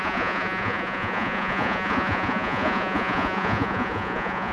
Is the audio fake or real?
fake